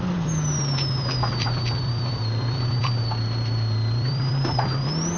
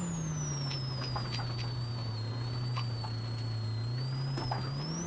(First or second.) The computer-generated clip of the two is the first